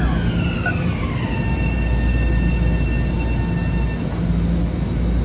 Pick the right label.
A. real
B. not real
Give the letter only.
A